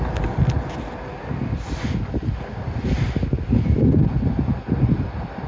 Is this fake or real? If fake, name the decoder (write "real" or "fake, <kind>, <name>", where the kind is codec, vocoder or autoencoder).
real